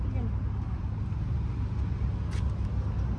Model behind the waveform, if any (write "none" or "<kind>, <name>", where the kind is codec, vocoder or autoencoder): none